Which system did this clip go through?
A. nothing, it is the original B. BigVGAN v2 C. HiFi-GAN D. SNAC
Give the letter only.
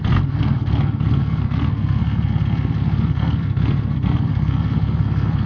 D